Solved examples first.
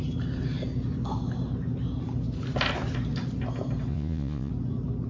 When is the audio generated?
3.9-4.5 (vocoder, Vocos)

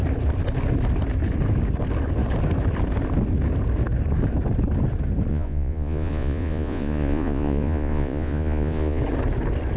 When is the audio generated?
5.3-9.0 (vocoder, Vocos)

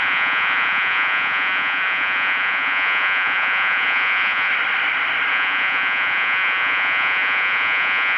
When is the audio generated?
0.0-4.5 (vocoder, Vocos); 5.3-8.2

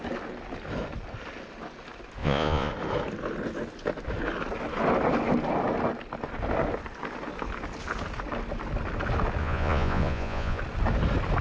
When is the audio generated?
2.2-2.7 (vocoder, Vocos); 9.4-10.6